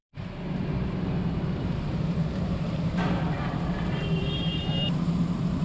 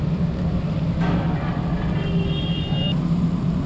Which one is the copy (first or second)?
first